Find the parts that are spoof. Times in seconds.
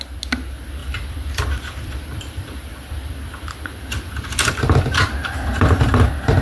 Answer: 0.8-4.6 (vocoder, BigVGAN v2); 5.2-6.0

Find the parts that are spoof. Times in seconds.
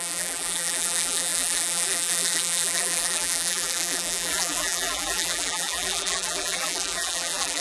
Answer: 0.0-7.6 (vocoder, BigVGAN v2)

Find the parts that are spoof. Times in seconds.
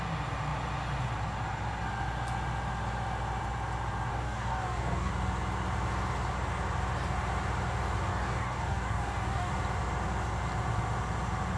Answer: 4.1-5.1 (codec, DAC); 8.1-9.5